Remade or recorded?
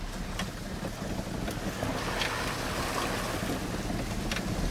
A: recorded